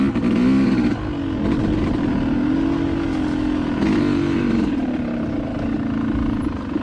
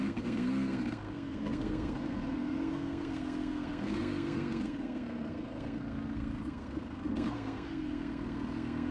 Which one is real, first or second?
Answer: first